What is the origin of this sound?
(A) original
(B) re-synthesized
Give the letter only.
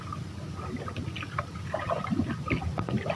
A